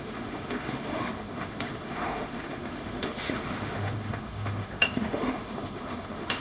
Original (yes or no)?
no